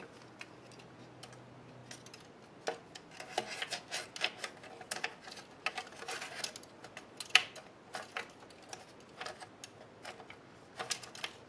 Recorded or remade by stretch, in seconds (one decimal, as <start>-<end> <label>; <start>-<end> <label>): 0.0-11.5 recorded